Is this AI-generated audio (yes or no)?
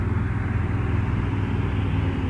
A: no